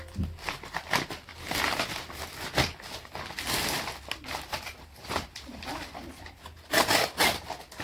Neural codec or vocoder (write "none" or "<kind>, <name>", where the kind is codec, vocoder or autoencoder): none